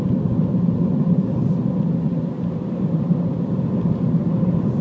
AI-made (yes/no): no